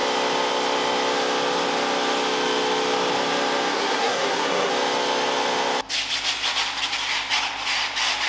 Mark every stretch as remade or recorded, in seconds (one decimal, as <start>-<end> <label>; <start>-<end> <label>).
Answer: 0.0-3.7 recorded; 3.7-4.7 remade; 4.7-8.3 recorded